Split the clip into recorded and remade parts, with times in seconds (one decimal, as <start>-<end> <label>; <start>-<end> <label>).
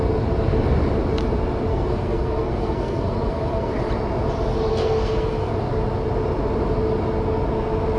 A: 0.0-1.7 recorded; 1.7-3.7 remade; 3.7-4.7 recorded; 4.7-5.5 remade; 5.5-8.0 recorded